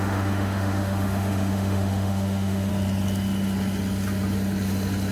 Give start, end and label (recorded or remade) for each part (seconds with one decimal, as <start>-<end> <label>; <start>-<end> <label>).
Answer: 0.0-2.7 remade; 2.7-5.1 recorded